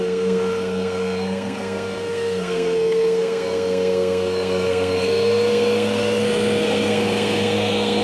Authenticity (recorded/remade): remade